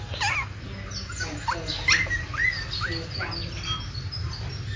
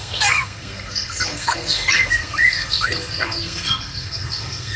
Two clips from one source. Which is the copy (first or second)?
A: second